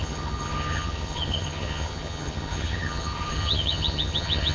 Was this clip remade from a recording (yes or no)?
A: yes